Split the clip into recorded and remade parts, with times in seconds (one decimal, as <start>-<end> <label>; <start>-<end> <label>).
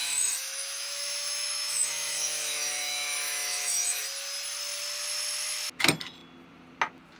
0.0-4.0 remade; 4.0-7.2 recorded